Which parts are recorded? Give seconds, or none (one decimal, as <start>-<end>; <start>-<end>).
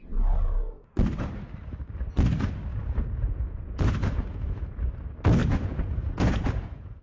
0.0-2.7; 4.8-5.4